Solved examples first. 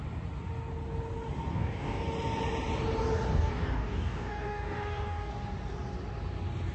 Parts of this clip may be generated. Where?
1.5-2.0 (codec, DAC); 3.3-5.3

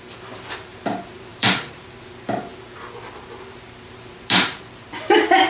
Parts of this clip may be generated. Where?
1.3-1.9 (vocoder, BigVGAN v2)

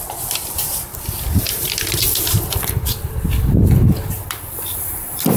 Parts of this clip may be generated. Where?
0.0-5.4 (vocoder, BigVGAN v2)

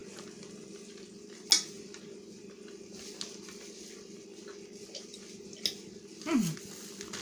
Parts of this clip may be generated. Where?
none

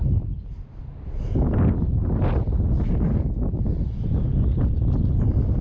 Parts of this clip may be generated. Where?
none

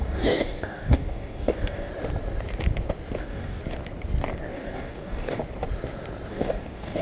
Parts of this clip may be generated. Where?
0.0-1.9 (codec, DAC); 3.2-3.6; 4.5-5.4; 6.3-7.0